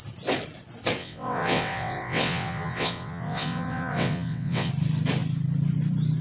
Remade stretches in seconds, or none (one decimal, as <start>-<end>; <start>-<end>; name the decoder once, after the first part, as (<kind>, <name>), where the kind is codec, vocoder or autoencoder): 1.0-4.7 (vocoder, WaveNeXt)